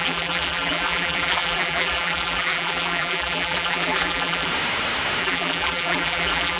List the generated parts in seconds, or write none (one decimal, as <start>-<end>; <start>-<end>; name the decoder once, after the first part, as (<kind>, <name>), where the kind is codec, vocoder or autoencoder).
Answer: 0.0-4.5 (vocoder, BigVGAN v2); 5.2-6.6